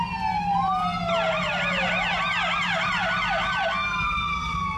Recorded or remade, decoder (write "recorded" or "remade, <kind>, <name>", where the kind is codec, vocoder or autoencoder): recorded